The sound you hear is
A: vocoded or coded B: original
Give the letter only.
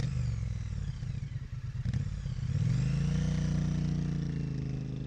B